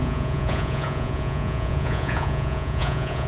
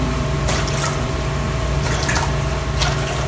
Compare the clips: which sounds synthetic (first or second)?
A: first